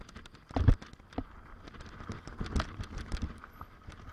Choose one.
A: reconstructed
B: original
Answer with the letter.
B